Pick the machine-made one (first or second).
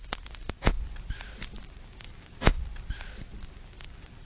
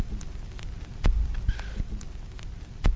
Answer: first